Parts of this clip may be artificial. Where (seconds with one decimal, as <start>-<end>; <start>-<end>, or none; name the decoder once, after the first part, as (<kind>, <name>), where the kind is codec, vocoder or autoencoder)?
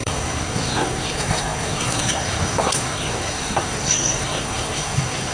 0.0-5.3 (codec, SNAC)